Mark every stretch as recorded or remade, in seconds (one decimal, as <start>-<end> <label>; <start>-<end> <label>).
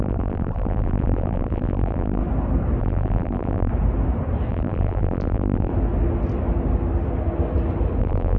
0.0-2.2 remade; 2.2-2.8 recorded; 2.8-3.7 remade; 3.7-4.5 recorded; 4.5-5.7 remade; 5.7-8.0 recorded; 8.0-8.4 remade